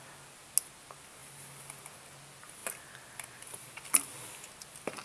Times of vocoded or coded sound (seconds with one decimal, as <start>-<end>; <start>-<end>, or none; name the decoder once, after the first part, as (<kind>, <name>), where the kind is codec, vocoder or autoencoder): none